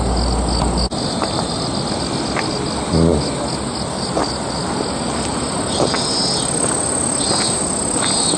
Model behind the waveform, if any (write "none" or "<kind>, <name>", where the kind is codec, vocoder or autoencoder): none